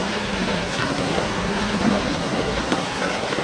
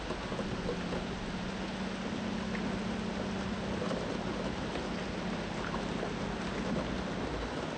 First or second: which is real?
second